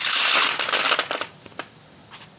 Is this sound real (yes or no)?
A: yes